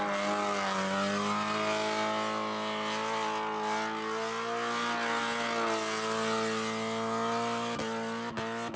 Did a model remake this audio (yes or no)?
no